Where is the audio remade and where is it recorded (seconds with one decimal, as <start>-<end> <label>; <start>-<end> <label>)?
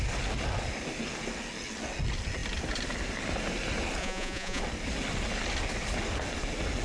0.0-4.0 recorded; 4.0-4.6 remade; 4.6-6.8 recorded